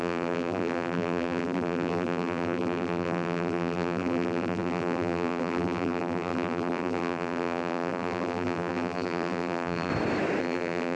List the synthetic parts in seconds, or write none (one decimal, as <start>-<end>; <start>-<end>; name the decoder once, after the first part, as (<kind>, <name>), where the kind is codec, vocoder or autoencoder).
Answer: 0.0-9.9 (vocoder, BigVGAN v2); 10.4-11.0